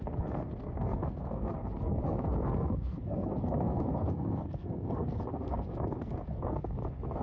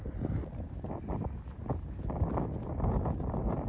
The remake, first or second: first